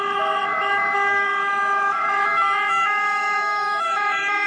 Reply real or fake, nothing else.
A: fake